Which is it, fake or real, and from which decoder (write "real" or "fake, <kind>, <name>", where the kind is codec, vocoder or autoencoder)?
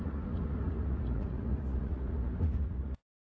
fake, vocoder, Vocos